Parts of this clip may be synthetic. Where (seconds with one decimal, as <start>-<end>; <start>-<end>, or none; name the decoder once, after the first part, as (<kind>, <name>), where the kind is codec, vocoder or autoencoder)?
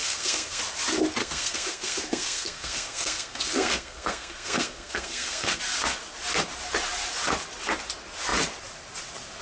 0.0-0.6 (codec, SNAC); 1.2-5.6